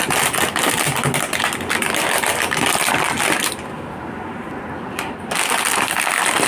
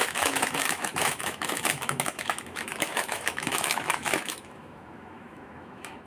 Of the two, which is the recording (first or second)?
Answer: first